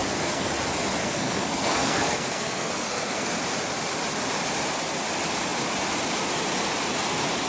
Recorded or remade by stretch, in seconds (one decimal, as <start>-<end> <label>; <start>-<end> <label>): 0.0-0.5 remade; 0.5-1.0 recorded; 1.0-3.3 remade; 3.3-7.5 recorded